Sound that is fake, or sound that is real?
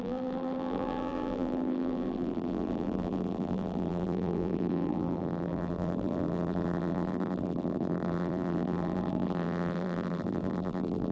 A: fake